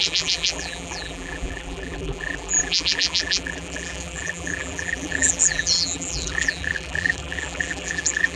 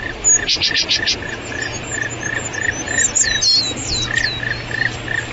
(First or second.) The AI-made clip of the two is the first